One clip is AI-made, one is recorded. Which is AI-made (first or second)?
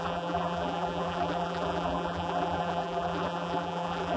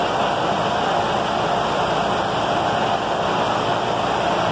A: first